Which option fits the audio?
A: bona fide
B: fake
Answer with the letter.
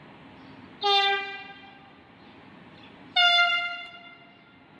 A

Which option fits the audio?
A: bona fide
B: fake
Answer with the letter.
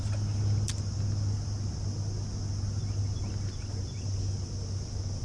A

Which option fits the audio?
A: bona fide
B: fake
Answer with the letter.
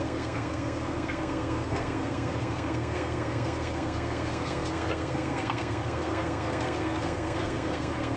B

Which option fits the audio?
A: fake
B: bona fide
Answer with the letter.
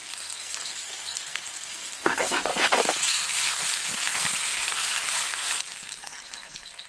A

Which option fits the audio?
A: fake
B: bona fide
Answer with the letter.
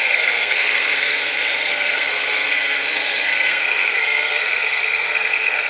A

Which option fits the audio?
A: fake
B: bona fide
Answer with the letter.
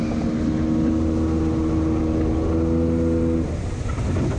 B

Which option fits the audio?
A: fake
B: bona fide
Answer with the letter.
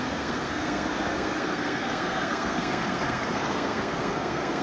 A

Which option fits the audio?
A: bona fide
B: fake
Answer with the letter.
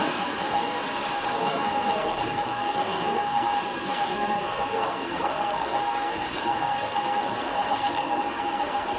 B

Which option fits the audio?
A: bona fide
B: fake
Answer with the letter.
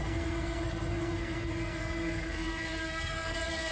B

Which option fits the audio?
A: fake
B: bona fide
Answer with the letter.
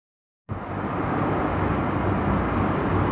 B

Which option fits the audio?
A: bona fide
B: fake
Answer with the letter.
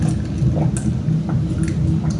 A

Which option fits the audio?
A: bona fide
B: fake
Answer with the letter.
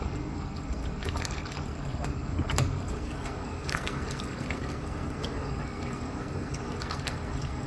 B